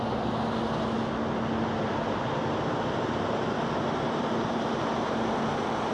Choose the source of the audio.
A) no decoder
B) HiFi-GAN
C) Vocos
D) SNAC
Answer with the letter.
A